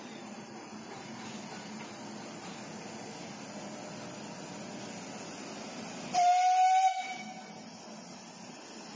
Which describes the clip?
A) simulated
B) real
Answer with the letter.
B